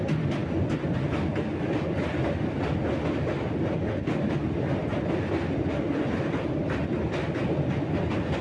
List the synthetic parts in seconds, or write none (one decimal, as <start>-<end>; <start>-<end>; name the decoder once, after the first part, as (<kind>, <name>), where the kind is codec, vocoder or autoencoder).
none